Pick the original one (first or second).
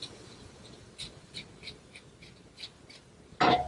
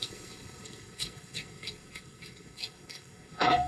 first